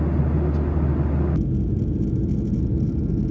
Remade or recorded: recorded